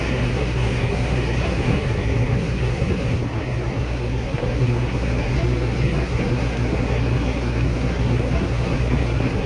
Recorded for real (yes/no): no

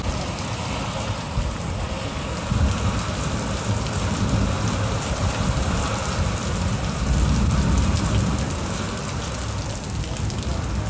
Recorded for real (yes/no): yes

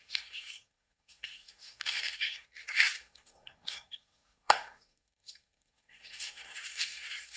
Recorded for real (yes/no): no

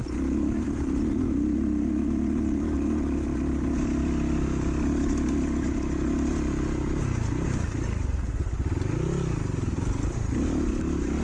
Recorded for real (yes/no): yes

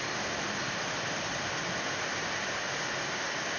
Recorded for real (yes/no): yes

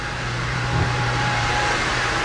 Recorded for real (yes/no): no